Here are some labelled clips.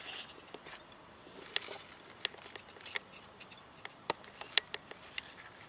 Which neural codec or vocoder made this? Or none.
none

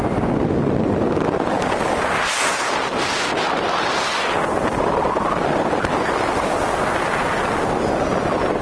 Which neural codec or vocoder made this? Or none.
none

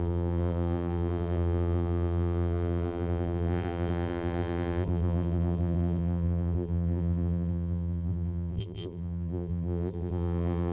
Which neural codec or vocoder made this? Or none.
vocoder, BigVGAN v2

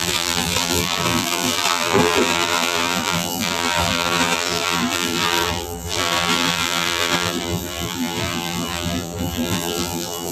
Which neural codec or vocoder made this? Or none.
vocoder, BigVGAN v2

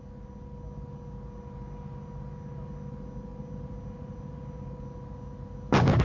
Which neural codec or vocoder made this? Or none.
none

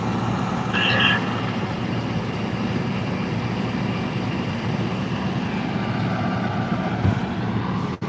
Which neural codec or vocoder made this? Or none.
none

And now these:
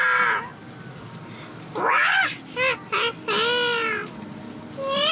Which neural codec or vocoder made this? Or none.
none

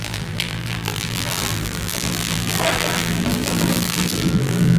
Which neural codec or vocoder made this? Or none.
vocoder, BigVGAN v2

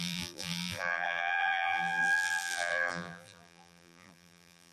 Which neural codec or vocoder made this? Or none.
vocoder, BigVGAN v2